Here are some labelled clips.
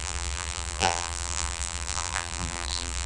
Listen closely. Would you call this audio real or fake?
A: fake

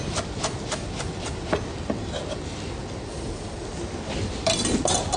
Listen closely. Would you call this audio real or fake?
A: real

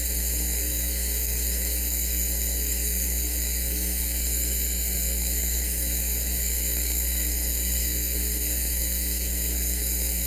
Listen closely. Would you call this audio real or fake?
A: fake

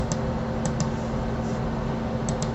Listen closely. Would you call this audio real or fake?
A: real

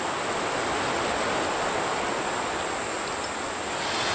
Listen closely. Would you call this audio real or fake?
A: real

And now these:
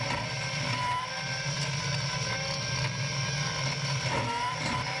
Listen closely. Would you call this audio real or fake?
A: real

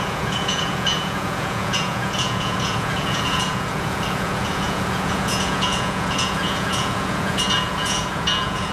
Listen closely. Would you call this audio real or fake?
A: fake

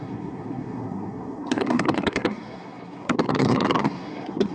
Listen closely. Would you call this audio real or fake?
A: fake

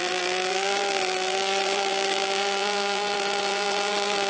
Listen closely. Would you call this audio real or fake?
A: fake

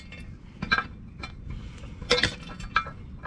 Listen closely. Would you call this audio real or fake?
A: real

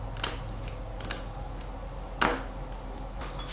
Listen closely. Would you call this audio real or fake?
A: real